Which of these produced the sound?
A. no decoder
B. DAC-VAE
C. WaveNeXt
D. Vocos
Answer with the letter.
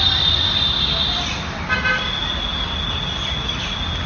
A